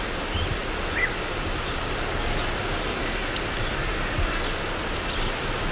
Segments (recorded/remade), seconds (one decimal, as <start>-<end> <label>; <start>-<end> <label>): 0.0-5.7 recorded